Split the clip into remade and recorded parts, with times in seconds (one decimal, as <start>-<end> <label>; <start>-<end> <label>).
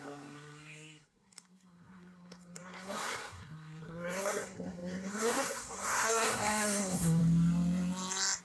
0.0-7.2 remade; 7.2-8.4 recorded